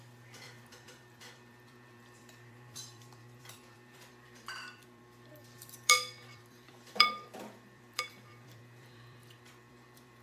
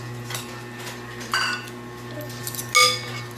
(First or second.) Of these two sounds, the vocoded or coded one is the first